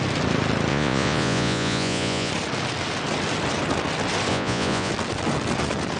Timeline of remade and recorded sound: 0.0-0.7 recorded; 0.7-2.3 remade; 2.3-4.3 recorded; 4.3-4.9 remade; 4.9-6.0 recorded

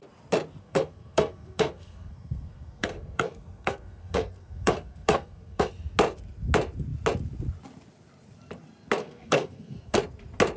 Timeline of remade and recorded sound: 0.0-0.6 recorded; 0.6-5.7 remade; 5.7-9.0 recorded; 9.0-10.0 remade; 10.0-10.6 recorded